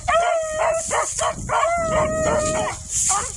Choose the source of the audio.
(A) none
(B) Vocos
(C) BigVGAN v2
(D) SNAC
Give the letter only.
A